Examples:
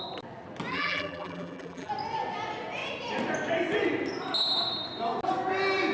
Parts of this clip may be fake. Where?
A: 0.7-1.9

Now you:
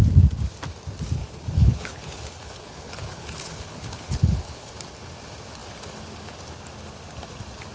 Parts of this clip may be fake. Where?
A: 1.2-4.7

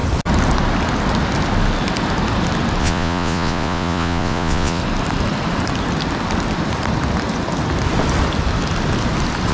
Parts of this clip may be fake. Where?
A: 2.8-4.8

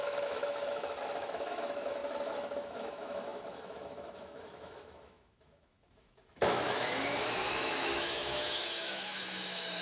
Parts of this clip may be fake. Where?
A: 0.0-9.8

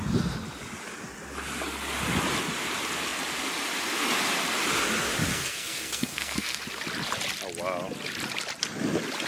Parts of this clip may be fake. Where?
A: 5.3-6.6

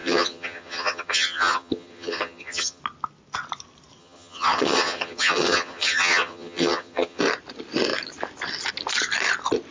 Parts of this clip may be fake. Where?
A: 0.0-2.8; 4.0-7.2